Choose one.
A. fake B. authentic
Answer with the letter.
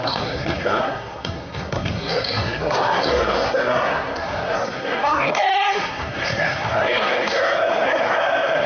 A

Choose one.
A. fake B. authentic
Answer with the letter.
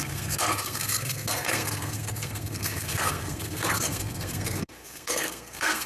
A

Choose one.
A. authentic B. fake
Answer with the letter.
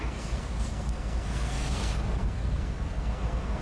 B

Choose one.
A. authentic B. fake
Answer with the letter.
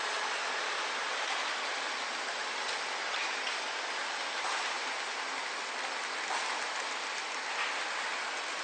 A